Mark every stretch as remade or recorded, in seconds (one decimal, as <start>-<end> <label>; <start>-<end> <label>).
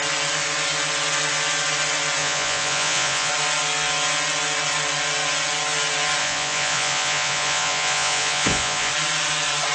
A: 0.0-2.2 recorded; 2.2-3.3 remade; 3.3-6.2 recorded; 6.2-8.9 remade; 8.9-9.7 recorded